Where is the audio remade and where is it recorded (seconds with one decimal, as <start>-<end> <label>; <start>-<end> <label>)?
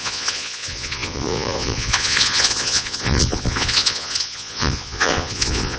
0.0-5.8 remade